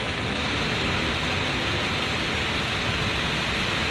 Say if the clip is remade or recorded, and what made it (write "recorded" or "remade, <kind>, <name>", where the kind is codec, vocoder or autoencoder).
recorded